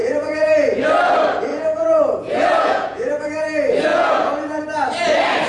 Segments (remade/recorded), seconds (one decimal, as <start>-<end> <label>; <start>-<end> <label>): 0.0-0.8 remade; 0.8-1.5 recorded; 1.5-3.3 remade; 3.3-3.9 recorded; 3.9-4.6 remade; 4.6-5.5 recorded